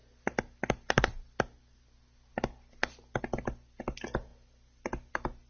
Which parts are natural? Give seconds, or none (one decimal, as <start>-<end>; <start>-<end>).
0.0-5.5